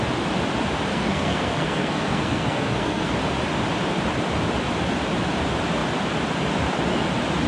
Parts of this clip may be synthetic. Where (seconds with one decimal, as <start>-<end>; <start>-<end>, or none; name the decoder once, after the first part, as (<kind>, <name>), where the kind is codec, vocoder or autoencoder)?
0.9-3.1 (codec, SNAC)